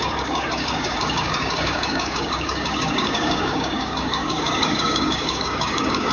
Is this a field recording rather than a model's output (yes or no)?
no